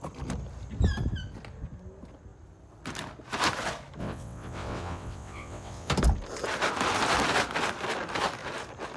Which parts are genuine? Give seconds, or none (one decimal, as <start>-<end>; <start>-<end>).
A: 0.0-4.0; 5.9-9.0